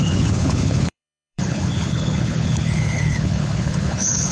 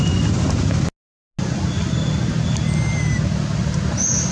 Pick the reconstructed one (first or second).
first